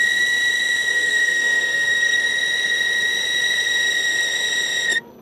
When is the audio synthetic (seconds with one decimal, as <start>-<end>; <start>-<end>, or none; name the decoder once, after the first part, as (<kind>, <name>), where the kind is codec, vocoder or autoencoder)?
0.9-2.2 (codec, SNAC)